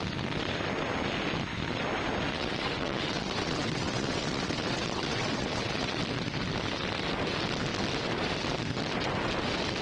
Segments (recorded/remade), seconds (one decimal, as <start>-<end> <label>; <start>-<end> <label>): 0.0-2.3 recorded; 2.3-6.0 remade; 6.0-9.8 recorded